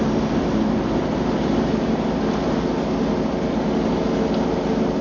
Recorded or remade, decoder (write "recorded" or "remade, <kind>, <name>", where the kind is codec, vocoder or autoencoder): recorded